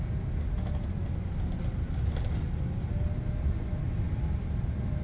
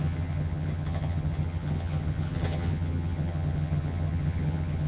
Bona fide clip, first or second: first